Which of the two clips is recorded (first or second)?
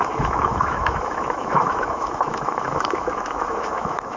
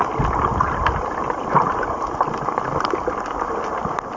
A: second